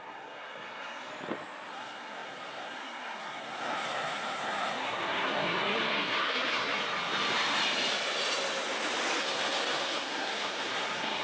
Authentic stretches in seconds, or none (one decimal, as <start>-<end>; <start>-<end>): 1.1-1.7; 6.8-9.2